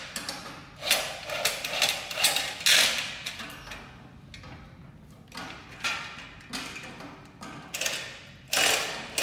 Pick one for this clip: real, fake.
real